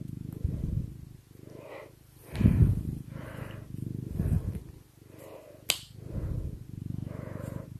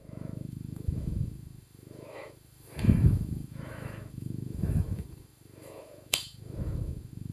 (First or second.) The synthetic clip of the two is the second